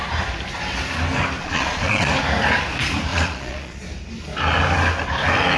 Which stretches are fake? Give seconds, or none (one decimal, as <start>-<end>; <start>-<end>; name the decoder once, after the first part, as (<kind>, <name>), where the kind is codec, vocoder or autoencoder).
1.4-2.1 (vocoder, Vocos); 3.1-3.8

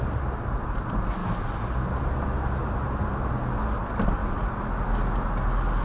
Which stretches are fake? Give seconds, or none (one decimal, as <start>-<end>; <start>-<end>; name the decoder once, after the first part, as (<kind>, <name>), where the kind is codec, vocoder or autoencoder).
2.6-3.3 (vocoder, BigVGAN v2)

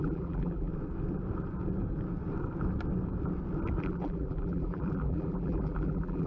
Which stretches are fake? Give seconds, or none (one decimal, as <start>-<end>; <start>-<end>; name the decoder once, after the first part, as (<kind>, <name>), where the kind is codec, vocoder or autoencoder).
0.0-0.7 (vocoder, BigVGAN v2); 3.8-6.3